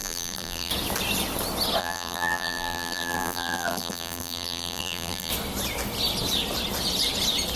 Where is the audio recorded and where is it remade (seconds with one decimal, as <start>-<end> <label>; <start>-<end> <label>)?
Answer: 0.0-0.7 remade; 0.7-1.8 recorded; 1.8-5.3 remade; 5.3-7.6 recorded